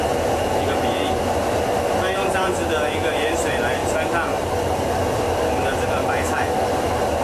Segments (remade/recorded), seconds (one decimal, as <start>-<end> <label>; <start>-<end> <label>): 0.0-3.8 remade; 3.8-5.1 recorded; 5.1-7.2 remade